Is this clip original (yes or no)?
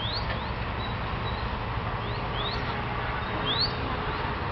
yes